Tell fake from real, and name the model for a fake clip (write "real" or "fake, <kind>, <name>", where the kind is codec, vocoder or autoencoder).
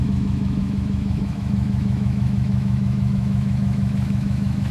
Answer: fake, autoencoder, DAC-VAE